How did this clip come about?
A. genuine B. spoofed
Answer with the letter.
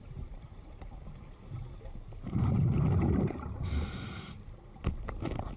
A